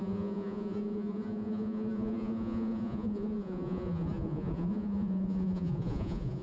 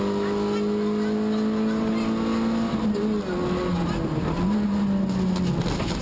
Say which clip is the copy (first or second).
first